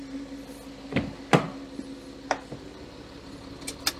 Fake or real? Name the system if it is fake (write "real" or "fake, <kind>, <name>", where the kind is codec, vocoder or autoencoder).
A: real